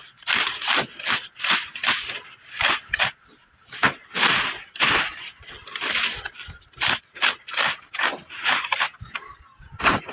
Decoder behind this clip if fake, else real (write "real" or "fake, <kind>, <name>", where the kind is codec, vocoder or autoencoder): real